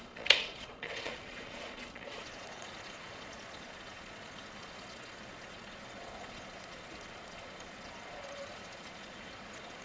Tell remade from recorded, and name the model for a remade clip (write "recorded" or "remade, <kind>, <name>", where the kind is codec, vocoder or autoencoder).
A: remade, vocoder, Vocos